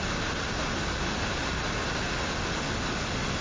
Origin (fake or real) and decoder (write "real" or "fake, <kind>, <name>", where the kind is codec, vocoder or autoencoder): real